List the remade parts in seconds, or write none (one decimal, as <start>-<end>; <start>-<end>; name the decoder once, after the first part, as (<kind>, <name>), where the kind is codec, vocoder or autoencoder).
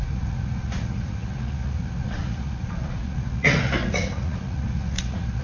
0.0-5.4 (vocoder, Vocos)